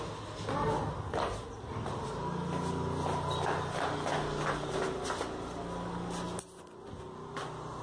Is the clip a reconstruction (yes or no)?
no